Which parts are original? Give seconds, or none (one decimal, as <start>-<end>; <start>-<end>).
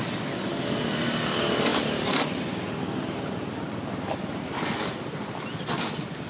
0.0-6.3